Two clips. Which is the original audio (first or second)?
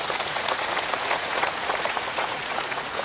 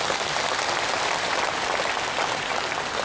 second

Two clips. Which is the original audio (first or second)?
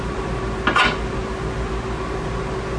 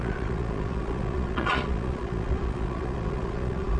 first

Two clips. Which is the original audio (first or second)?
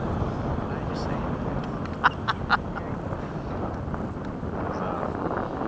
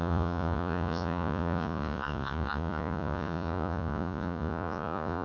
first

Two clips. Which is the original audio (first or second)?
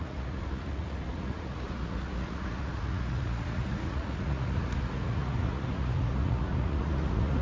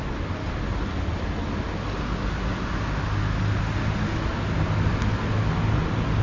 second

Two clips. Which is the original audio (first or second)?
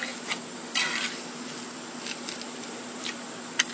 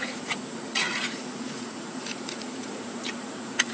first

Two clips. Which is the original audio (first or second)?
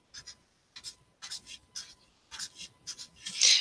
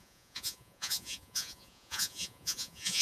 first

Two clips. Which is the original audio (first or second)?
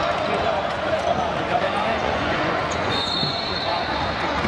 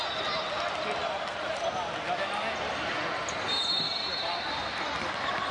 second